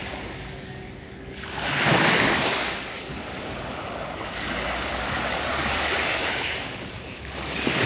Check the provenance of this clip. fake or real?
fake